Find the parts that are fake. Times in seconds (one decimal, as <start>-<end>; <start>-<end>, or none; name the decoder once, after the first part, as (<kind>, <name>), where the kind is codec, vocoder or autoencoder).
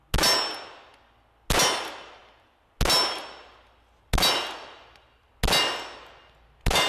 none